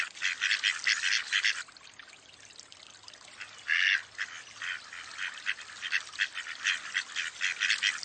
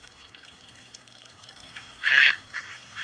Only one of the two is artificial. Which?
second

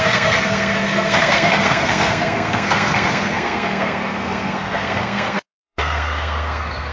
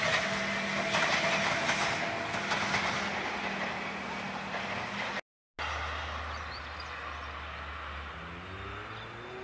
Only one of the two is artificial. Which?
first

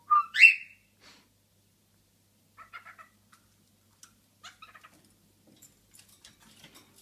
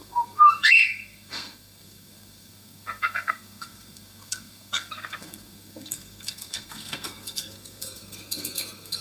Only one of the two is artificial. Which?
second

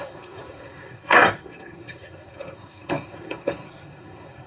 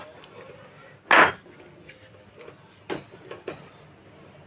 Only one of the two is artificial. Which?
first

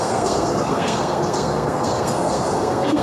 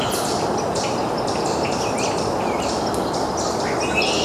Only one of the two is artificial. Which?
first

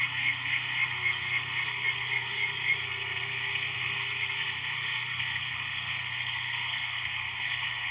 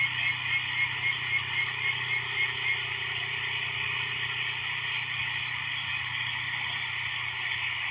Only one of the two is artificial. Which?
first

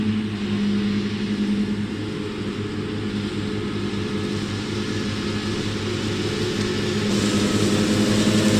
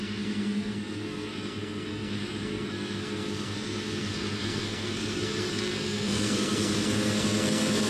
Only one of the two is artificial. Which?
second